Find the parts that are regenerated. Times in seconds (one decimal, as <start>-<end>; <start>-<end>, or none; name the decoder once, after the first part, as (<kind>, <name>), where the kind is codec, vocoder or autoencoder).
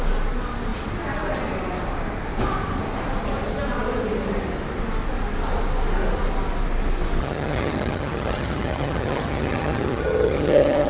7.2-10.9 (vocoder, HiFi-GAN)